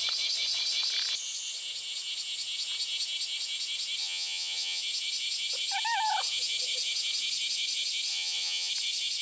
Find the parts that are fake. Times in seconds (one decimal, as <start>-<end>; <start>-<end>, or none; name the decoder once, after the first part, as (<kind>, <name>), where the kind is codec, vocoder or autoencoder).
4.0-4.8 (vocoder, HiFi-GAN); 8.1-8.7